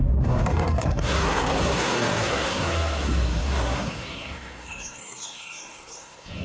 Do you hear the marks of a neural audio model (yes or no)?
yes